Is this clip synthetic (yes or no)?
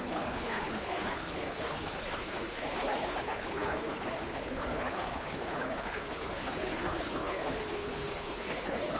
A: yes